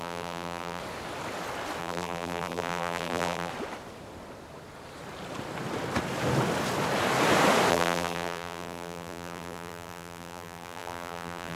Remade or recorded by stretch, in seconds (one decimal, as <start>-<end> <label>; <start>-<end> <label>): 0.0-0.8 remade; 0.8-1.8 recorded; 1.8-3.5 remade; 3.5-7.7 recorded; 7.7-11.6 remade